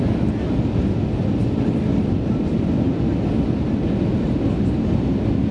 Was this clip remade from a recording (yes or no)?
no